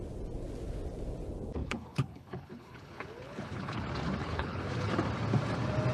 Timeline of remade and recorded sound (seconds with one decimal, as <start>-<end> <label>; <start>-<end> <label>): 0.0-1.6 recorded; 1.6-3.8 remade; 3.8-4.2 recorded; 4.2-4.9 remade; 4.9-5.9 recorded